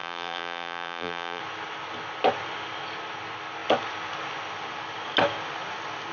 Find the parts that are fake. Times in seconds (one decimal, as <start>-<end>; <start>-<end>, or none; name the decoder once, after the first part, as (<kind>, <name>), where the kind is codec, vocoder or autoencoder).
0.0-1.4 (vocoder, BigVGAN v2)